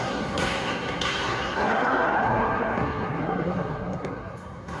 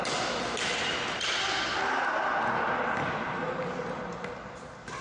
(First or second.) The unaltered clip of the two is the second